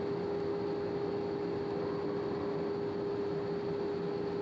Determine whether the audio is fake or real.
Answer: real